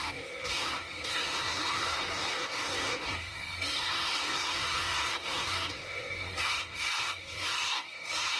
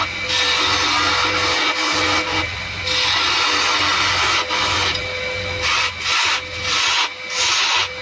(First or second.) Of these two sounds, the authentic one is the second